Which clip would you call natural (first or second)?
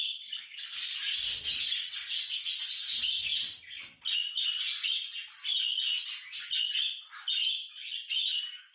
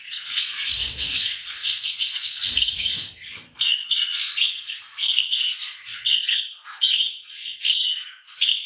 first